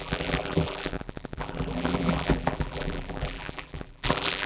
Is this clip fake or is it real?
fake